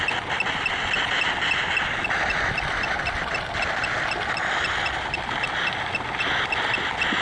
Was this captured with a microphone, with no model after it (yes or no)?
yes